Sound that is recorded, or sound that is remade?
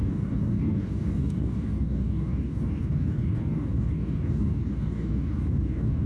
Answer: remade